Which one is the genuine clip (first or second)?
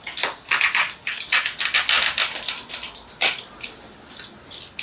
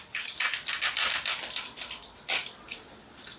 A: first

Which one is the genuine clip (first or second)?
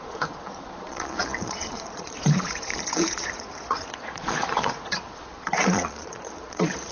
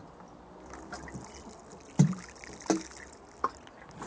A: second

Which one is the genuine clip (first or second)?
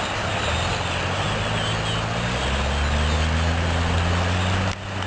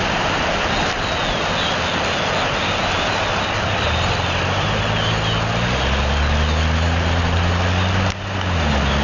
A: first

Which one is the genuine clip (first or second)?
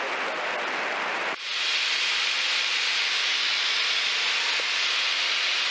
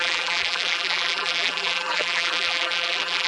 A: first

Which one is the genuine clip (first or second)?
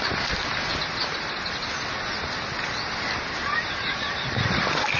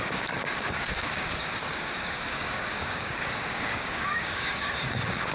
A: first